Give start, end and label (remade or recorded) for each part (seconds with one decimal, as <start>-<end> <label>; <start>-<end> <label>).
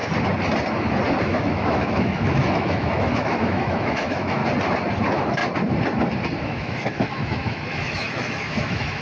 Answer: 0.0-1.2 recorded; 1.2-4.4 remade; 4.4-5.0 recorded; 5.0-5.4 remade; 5.4-6.4 recorded; 6.4-9.0 remade